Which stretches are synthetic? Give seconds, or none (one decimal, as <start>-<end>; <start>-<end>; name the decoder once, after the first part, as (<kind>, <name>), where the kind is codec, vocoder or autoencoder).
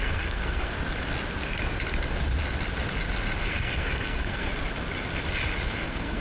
0.0-0.7 (codec, SNAC); 3.4-4.5; 5.7-6.2